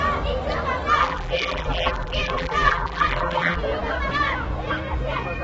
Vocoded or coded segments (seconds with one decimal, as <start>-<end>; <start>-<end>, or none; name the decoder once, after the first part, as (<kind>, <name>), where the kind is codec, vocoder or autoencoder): 1.0-3.6 (vocoder, BigVGAN v2)

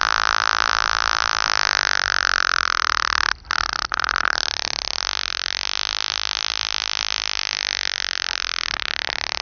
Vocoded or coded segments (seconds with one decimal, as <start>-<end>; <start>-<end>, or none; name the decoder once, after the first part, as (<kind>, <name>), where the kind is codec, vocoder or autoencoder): none

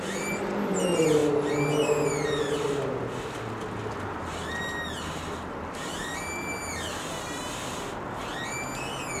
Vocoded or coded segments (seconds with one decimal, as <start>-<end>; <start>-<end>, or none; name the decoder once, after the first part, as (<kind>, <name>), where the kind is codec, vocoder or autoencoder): none

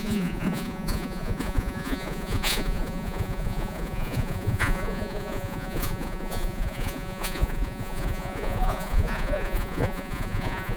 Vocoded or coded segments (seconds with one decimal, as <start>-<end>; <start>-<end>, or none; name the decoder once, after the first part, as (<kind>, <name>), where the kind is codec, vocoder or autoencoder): 0.0-10.8 (vocoder, Vocos)

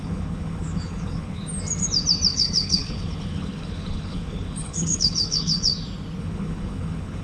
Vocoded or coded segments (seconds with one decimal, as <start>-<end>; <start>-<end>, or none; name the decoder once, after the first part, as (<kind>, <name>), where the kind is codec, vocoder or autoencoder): 0.0-1.4 (codec, HILCodec); 2.3-5.7; 6.2-7.2

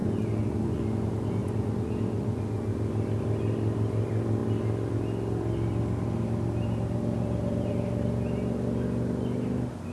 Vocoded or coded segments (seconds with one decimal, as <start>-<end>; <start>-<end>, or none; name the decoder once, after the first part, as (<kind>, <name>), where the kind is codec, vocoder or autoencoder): 0.0-0.8 (vocoder, Vocos); 1.4-2.7

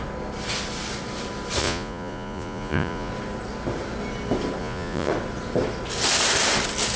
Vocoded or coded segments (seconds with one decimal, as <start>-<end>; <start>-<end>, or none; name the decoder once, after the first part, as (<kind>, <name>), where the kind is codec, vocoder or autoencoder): 1.6-3.1 (vocoder, Vocos); 4.6-5.1

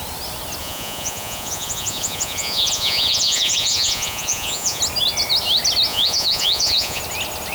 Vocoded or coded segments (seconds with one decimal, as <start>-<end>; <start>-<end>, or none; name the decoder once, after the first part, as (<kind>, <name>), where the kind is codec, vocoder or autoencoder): 0.6-4.8 (vocoder, Vocos); 5.9-7.0